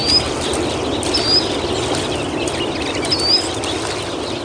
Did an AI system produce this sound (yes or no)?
no